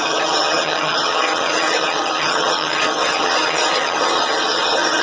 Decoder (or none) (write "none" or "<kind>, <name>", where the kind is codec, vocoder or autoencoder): vocoder, HiFi-GAN